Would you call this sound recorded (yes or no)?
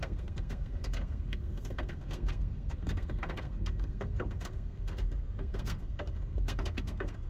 no